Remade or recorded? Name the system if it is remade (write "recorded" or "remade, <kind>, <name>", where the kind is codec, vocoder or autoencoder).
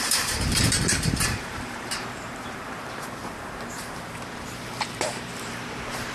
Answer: remade, vocoder, BigVGAN v2